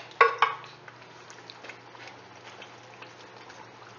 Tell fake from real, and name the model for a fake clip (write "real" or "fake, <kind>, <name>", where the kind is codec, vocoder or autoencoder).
real